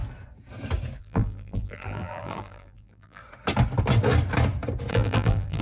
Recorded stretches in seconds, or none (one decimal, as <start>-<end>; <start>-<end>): 0.0-1.0; 3.2-4.9